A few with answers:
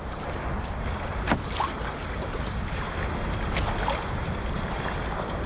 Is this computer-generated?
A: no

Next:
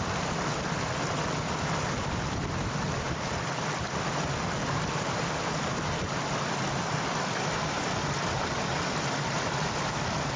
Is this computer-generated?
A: no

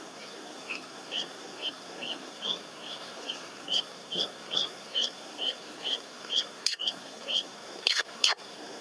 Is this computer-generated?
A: yes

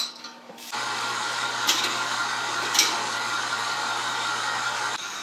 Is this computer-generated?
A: yes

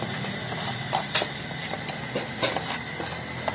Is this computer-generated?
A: no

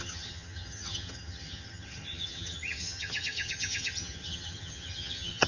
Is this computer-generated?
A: yes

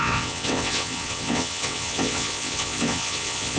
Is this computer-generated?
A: yes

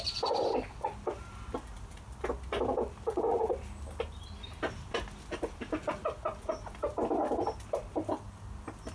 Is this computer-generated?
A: no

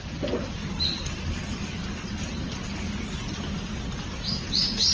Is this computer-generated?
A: no